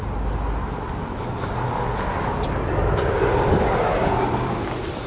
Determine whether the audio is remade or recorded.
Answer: recorded